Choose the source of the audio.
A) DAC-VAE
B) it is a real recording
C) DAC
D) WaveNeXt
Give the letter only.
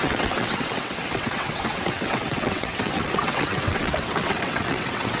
D